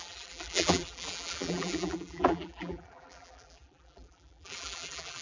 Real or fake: fake